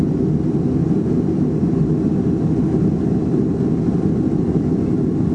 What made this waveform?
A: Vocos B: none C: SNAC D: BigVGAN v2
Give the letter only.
B